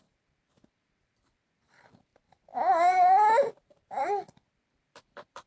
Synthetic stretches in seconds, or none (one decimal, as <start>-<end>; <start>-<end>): 0.0-2.1; 3.5-5.5